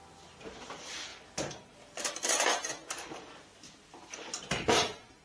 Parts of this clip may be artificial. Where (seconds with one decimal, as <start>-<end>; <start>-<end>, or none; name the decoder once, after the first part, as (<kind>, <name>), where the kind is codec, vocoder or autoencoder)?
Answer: none